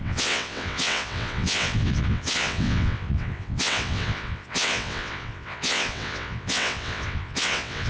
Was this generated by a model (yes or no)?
yes